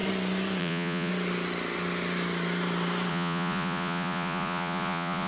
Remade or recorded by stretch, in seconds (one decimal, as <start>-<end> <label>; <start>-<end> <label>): 0.0-0.6 recorded; 0.6-1.1 remade; 1.1-3.1 recorded; 3.1-5.3 remade